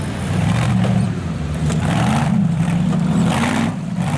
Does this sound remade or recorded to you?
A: remade